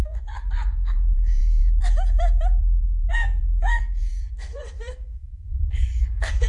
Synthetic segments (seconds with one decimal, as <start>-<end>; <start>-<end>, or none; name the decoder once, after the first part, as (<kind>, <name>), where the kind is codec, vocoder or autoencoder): 0.0-1.4 (codec, SNAC); 3.1-6.5